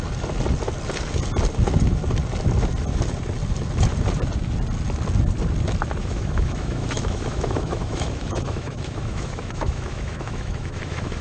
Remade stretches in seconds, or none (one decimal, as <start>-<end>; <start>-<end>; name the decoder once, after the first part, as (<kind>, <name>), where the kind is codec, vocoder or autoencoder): 6.0-11.2 (autoencoder, DAC-VAE)